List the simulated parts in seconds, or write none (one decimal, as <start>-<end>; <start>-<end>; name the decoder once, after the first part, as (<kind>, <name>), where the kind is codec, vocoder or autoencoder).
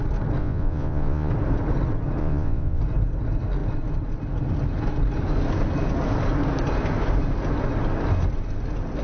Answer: 0.4-1.3 (vocoder, Vocos); 2.2-2.8